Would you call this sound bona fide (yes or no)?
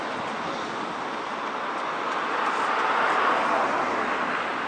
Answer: yes